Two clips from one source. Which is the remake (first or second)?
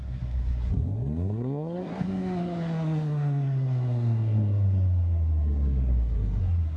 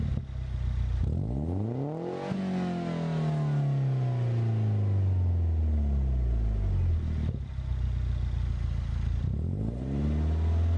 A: first